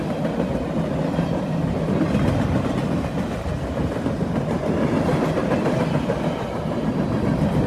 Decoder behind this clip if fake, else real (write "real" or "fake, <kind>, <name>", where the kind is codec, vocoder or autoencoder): real